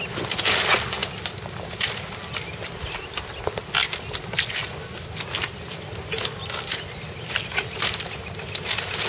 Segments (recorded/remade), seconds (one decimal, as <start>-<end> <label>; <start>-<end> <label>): 0.0-9.1 recorded